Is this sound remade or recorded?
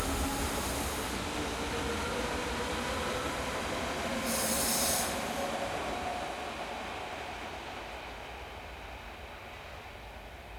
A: recorded